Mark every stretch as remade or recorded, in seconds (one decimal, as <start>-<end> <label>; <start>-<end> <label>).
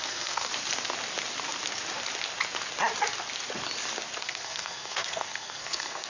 0.0-0.5 remade; 0.5-4.2 recorded; 4.2-6.1 remade